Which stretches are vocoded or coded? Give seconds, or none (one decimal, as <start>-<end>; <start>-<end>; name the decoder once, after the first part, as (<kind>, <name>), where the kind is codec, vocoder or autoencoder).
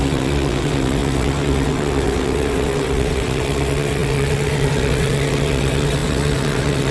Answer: 0.0-6.9 (vocoder, WaveNeXt)